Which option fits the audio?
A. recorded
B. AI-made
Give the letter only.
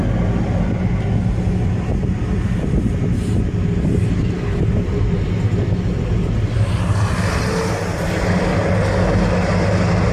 A